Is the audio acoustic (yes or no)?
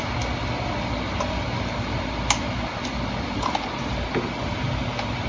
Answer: yes